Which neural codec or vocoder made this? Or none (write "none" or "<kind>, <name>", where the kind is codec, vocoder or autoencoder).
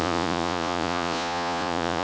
vocoder, Vocos